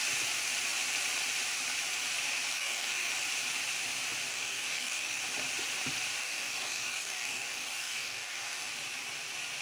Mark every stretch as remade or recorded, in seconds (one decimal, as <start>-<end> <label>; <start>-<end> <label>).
0.0-2.5 recorded; 2.5-3.1 remade; 3.1-4.3 recorded; 4.3-5.2 remade; 5.2-6.2 recorded; 6.2-8.7 remade; 8.7-9.6 recorded